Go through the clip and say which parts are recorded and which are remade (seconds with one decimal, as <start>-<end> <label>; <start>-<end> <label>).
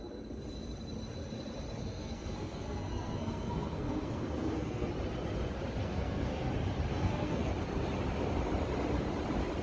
0.0-1.8 recorded; 1.8-4.9 remade; 4.9-5.8 recorded; 5.8-6.5 remade; 6.5-6.9 recorded; 6.9-7.5 remade; 7.5-9.6 recorded